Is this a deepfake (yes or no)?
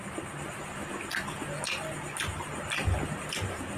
no